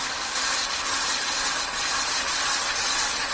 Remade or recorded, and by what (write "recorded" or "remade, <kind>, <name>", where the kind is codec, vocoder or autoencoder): recorded